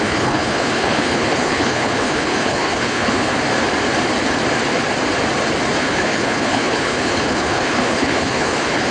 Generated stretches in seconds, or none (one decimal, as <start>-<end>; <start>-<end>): 0.0-3.3; 5.8-8.9